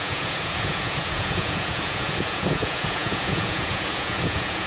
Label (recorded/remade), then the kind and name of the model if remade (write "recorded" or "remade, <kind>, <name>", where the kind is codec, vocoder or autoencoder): remade, vocoder, Vocos